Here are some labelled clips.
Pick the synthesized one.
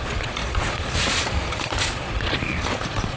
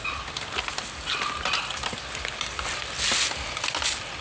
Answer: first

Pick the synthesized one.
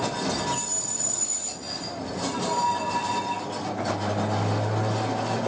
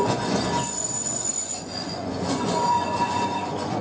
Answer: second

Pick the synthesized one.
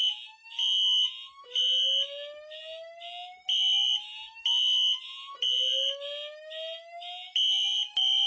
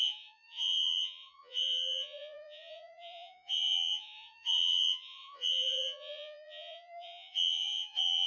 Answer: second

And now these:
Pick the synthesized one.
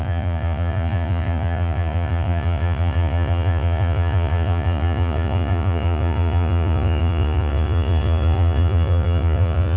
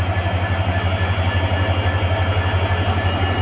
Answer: first